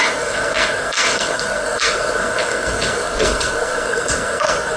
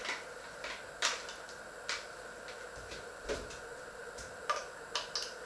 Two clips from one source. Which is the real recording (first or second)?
second